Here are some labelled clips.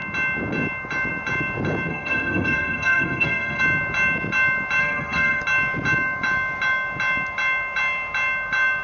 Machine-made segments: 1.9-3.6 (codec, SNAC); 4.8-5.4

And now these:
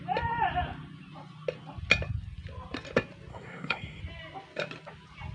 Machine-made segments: 3.3-4.0 (codec, SNAC)

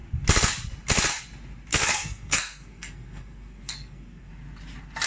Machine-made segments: 1.7-4.3 (codec, SNAC)

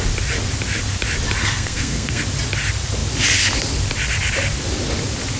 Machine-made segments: 1.4-2.2 (codec, SNAC)

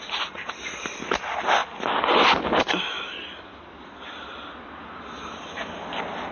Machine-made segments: none

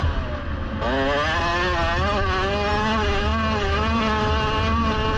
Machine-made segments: none

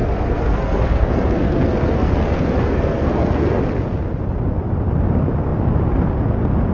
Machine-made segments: 0.0-3.6 (codec, SNAC)